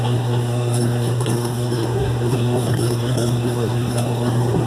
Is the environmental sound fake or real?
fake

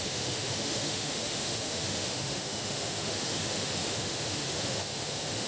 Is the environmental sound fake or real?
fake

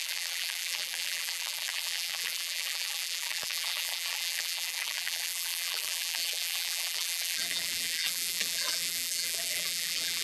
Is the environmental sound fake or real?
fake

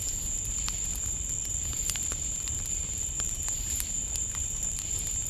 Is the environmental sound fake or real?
fake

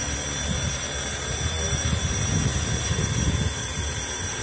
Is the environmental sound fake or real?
real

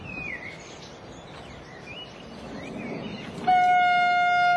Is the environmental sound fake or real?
real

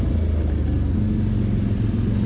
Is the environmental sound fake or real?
real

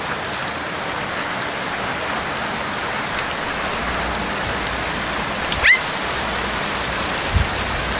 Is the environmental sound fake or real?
real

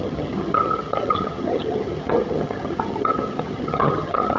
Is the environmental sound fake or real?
fake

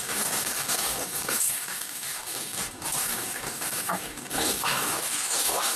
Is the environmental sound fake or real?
fake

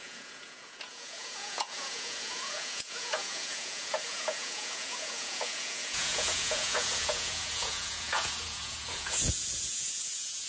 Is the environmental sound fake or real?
fake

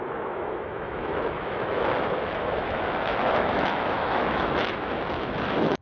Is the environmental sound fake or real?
fake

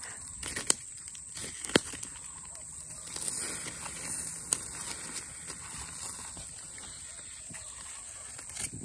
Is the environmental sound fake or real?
real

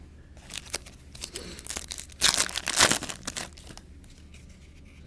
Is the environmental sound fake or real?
real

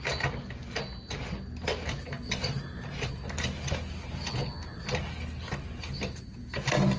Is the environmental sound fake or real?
real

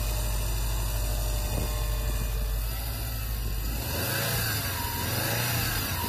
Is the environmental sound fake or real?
real